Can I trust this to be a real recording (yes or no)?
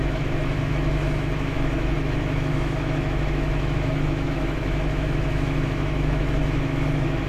no